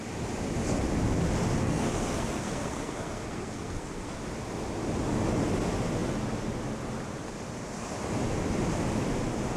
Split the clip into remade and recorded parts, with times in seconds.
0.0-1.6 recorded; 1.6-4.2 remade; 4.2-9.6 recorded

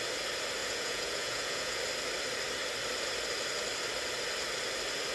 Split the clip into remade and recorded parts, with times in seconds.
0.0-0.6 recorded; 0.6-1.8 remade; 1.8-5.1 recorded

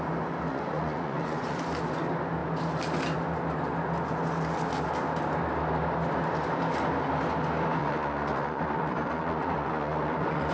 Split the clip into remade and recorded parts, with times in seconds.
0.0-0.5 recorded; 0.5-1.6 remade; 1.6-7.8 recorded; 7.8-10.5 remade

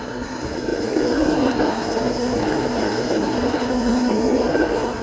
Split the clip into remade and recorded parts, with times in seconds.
0.0-5.0 remade